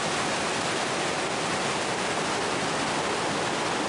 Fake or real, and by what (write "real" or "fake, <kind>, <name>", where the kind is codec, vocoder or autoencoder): real